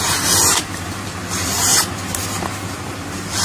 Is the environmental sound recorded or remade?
remade